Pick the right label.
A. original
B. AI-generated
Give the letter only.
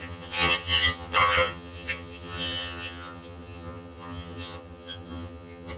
B